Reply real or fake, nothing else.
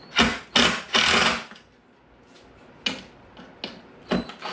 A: real